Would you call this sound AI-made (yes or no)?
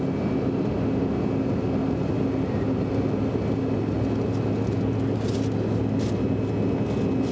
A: no